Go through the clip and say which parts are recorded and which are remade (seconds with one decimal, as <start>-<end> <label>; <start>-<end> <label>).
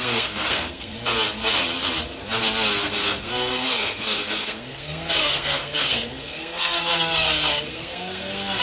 0.0-0.9 remade; 0.9-2.8 recorded; 2.8-8.6 remade